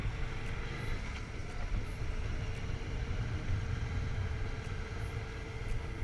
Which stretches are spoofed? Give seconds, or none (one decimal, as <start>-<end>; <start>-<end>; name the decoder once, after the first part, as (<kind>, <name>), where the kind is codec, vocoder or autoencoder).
none